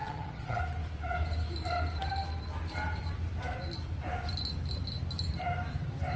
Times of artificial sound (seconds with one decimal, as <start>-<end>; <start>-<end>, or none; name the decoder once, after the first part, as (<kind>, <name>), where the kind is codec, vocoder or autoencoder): 0.0-0.6 (vocoder, HiFi-GAN)